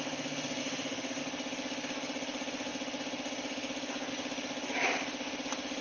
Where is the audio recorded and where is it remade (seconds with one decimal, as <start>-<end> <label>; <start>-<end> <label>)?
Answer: 0.0-0.6 recorded; 0.6-1.2 remade; 1.2-5.8 recorded